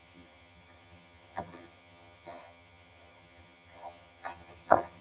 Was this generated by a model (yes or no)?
yes